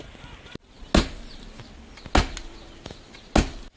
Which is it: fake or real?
real